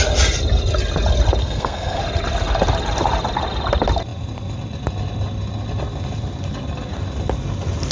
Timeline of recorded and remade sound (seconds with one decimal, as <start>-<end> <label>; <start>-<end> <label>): 0.0-1.4 recorded; 1.4-2.0 remade; 2.0-7.9 recorded